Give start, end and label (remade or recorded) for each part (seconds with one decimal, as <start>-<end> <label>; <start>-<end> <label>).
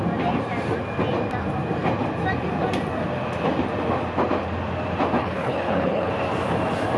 0.0-5.2 recorded; 5.2-6.1 remade; 6.1-7.0 recorded